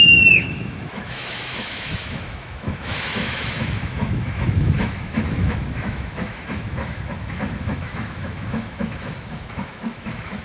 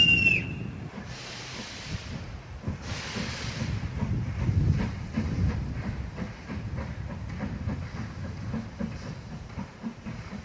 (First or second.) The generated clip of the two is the first